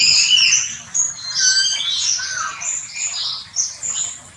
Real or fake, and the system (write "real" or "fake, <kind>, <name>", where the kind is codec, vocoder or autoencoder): real